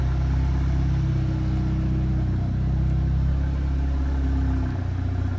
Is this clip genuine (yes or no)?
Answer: yes